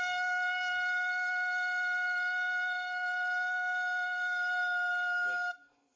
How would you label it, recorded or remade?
remade